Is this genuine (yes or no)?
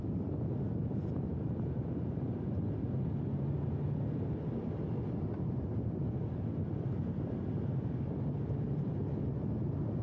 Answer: yes